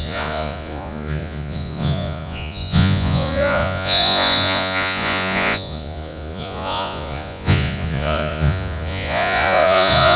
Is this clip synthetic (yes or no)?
yes